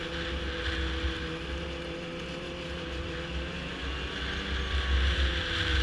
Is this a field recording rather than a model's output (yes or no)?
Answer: yes